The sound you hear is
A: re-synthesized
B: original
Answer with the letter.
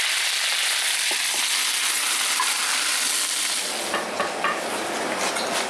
B